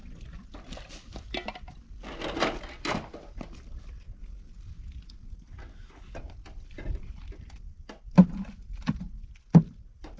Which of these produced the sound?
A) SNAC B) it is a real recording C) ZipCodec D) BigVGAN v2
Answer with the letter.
B